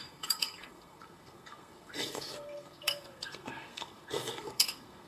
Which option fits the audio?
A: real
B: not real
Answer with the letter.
B